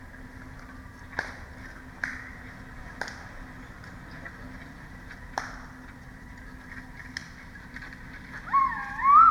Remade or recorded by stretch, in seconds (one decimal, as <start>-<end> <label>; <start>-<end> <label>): 0.0-7.2 recorded; 7.2-8.3 remade; 8.3-9.3 recorded

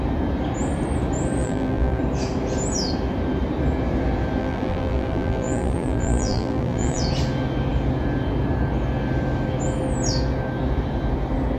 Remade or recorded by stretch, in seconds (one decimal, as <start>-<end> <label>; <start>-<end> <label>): 0.0-1.4 recorded; 1.4-2.0 remade; 2.0-4.4 recorded; 4.4-7.0 remade; 7.0-11.6 recorded

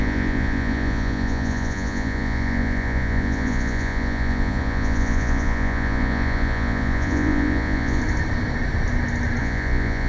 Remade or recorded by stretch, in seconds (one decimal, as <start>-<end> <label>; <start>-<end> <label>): 0.0-8.0 remade; 8.0-9.4 recorded; 9.4-10.1 remade

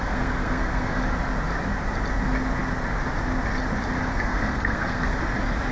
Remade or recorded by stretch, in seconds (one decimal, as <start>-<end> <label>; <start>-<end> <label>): 0.0-1.0 remade; 1.0-4.1 recorded; 4.1-5.2 remade; 5.2-5.7 recorded